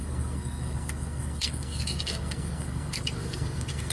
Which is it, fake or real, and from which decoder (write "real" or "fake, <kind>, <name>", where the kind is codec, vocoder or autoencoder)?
fake, codec, SNAC